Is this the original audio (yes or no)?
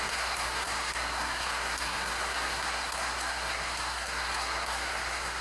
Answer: no